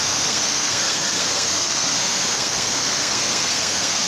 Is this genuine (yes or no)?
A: no